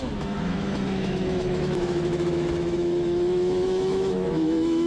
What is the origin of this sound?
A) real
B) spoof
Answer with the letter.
B